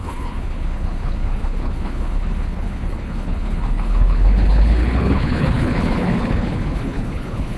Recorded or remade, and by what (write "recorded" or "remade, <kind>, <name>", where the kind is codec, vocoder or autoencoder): remade, codec, HILCodec